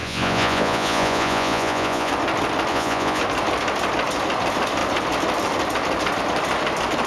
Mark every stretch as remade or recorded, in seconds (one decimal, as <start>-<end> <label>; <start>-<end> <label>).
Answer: 0.0-2.1 remade; 2.1-2.7 recorded; 2.7-3.2 remade; 3.2-7.1 recorded

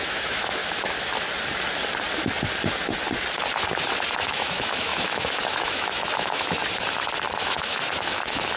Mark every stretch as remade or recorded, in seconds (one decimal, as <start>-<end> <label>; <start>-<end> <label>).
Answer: 0.0-0.6 remade; 0.6-4.2 recorded; 4.2-6.6 remade; 6.6-7.4 recorded; 7.4-8.6 remade

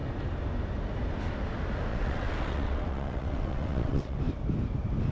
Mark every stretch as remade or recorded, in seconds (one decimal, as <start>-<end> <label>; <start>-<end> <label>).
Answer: 0.0-1.9 recorded; 1.9-4.2 remade; 4.2-5.1 recorded

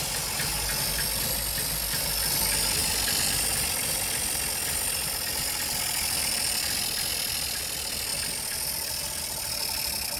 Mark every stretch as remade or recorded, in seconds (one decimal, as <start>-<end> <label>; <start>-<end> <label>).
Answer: 0.0-10.2 recorded

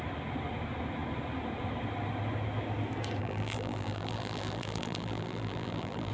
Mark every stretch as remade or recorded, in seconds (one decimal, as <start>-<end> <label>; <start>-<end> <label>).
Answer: 0.0-3.2 recorded; 3.2-6.1 remade